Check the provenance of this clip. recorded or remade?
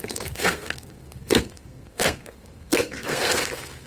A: remade